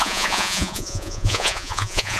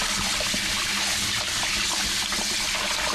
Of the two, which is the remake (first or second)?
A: first